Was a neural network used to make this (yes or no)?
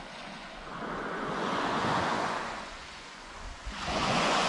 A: yes